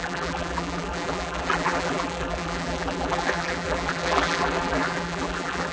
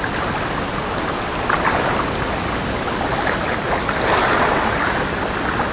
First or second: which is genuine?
second